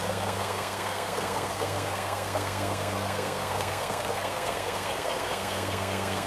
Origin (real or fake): fake